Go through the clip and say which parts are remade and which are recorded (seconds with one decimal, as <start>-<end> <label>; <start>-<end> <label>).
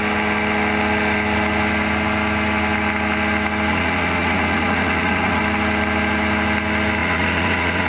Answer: 0.0-3.7 recorded; 3.7-5.4 remade; 5.4-7.0 recorded; 7.0-7.9 remade